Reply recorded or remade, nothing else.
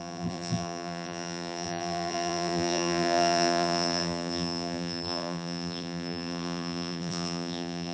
remade